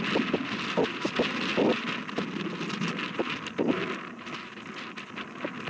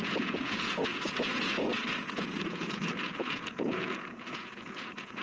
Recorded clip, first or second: first